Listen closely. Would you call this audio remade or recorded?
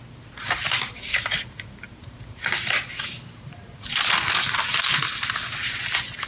recorded